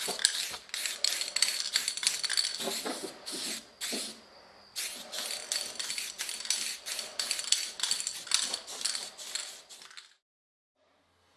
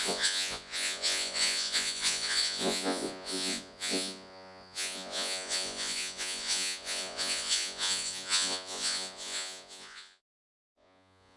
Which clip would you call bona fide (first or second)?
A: first